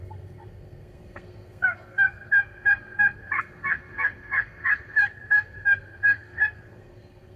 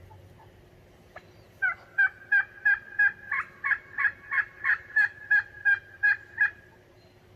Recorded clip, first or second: second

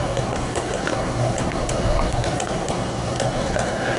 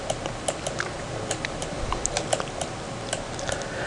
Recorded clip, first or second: second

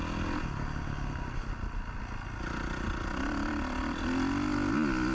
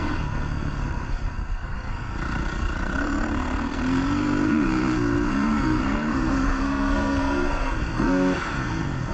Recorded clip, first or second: first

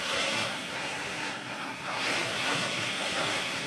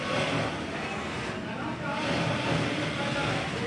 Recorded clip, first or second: second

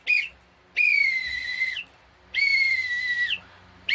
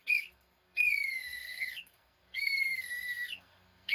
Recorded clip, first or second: first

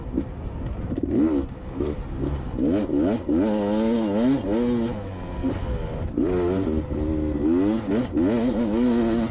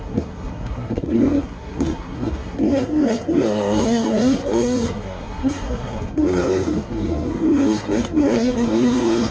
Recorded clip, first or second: first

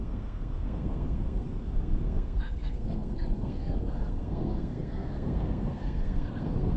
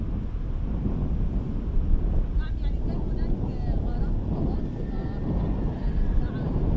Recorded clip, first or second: second